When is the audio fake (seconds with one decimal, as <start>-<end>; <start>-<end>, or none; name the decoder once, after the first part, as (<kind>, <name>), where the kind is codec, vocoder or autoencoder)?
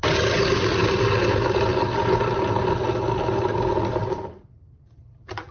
none